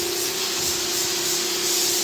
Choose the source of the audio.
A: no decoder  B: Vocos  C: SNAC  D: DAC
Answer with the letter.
A